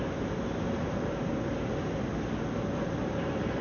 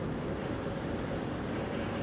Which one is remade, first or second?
second